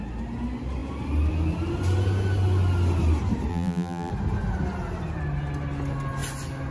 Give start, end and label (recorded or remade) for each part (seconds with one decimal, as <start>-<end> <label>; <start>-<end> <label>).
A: 0.0-3.5 recorded; 3.5-4.1 remade; 4.1-6.7 recorded